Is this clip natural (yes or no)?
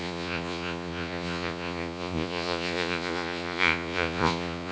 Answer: no